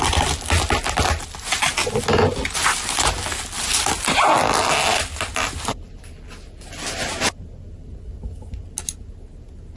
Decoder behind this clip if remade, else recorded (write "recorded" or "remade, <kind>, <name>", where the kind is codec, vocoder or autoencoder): recorded